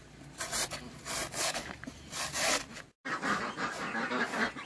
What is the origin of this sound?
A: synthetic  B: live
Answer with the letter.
A